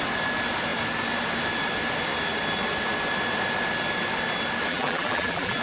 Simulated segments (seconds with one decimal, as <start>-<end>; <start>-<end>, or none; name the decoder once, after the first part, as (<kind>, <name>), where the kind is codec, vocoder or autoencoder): 4.7-5.6 (vocoder, BigVGAN v2)